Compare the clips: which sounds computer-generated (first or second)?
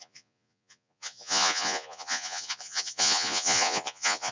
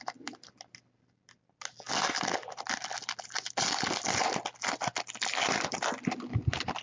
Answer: first